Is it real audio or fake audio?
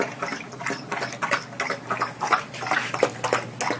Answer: real